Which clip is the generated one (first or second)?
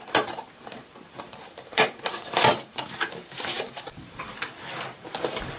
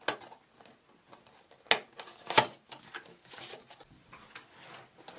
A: first